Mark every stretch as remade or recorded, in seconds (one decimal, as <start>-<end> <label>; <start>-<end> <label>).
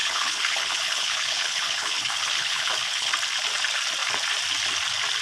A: 0.0-3.1 remade; 3.1-5.2 recorded